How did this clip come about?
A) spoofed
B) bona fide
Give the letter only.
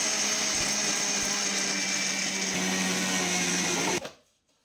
B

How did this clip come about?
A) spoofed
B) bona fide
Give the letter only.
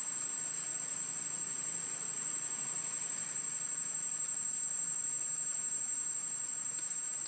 B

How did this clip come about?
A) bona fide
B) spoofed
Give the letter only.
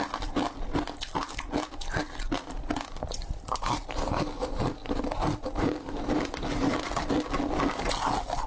A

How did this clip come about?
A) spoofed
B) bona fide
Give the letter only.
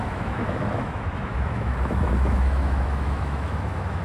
A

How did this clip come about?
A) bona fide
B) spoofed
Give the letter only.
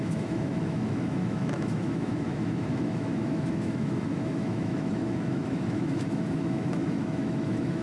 B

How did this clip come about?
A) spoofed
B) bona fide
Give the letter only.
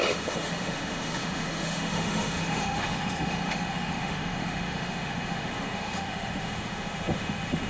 A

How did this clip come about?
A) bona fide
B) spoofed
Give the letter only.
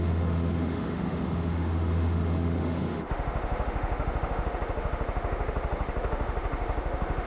B